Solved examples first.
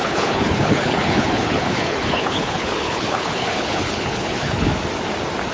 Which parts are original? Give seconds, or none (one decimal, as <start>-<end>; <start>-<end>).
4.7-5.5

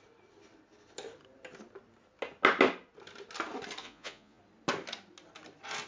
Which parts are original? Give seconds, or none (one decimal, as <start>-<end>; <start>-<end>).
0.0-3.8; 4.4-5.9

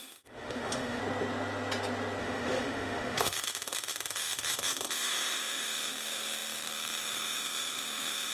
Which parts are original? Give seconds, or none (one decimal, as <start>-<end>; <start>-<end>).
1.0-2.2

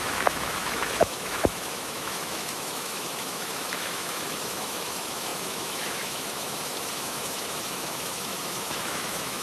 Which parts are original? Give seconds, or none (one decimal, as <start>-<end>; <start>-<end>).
none